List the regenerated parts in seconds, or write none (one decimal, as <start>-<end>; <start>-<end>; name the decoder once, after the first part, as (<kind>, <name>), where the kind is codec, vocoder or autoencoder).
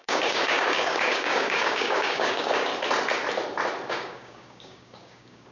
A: 0.0-2.7 (codec, DAC); 3.9-5.5